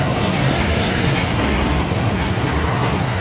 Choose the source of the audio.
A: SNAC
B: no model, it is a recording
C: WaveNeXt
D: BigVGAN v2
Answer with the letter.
A